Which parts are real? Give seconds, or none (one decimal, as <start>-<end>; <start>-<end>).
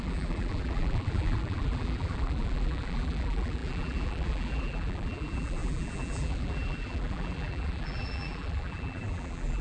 none